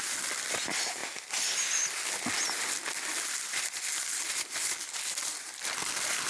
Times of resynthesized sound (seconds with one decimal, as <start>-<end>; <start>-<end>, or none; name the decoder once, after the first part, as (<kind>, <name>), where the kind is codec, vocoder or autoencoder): none

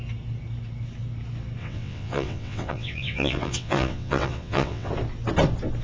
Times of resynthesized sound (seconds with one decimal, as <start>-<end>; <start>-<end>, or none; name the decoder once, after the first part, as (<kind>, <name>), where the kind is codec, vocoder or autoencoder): 1.6-4.9 (vocoder, WaveNeXt)

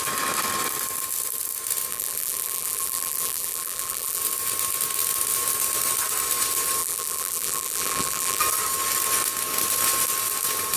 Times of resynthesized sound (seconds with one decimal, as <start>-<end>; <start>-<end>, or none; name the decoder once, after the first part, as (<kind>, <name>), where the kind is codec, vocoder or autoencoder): 1.9-4.2 (vocoder, BigVGAN v2); 6.8-8.4